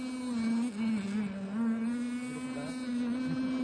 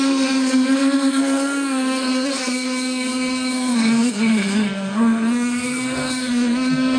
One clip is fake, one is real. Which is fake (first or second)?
second